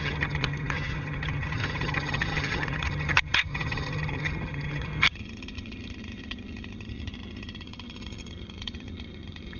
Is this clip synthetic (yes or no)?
yes